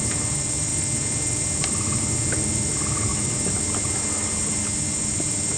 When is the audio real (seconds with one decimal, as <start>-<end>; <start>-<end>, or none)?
0.0-5.6